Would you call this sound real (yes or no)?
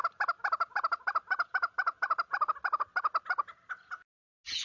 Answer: yes